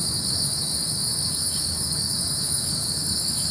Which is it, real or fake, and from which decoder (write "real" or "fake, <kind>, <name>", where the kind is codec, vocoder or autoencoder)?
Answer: fake, codec, DAC